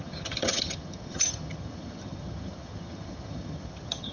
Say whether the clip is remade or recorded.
remade